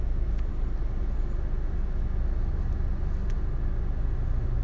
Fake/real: real